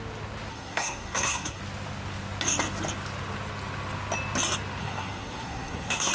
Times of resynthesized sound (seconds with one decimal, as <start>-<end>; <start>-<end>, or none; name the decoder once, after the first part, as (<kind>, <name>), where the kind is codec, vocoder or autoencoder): 0.5-1.6 (codec, SNAC); 4.8-6.1